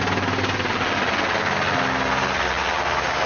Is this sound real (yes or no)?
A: yes